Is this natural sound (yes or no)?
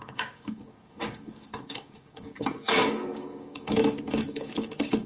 no